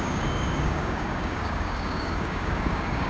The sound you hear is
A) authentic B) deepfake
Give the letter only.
B